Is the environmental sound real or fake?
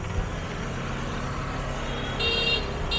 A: real